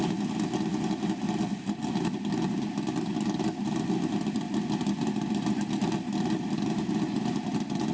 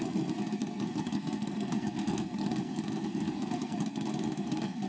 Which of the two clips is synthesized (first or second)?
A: second